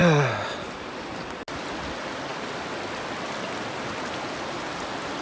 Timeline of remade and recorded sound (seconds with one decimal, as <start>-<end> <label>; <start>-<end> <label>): 0.0-5.2 recorded